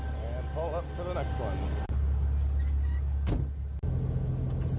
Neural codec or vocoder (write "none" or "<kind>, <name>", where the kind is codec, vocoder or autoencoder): none